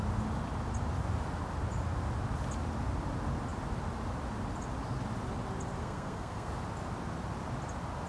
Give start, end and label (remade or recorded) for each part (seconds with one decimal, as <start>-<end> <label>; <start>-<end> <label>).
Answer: 0.0-5.8 recorded; 5.8-6.5 remade; 6.5-8.1 recorded

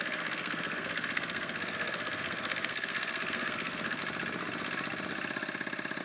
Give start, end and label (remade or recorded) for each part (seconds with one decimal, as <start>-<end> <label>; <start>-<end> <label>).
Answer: 0.0-4.0 remade; 4.0-6.0 recorded

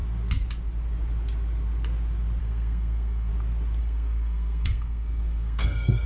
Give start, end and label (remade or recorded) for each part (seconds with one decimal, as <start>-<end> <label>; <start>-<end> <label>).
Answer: 0.0-2.4 recorded; 2.4-3.3 remade; 3.3-3.8 recorded; 3.8-6.1 remade

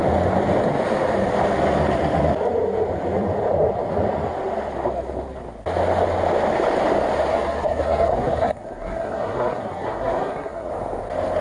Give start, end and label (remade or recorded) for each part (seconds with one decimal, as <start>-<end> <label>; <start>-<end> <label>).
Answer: 0.0-7.3 recorded; 7.3-10.7 remade; 10.7-11.4 recorded